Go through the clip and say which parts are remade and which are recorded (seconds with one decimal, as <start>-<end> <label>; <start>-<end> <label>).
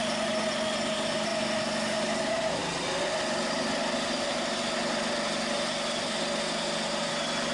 0.0-7.5 recorded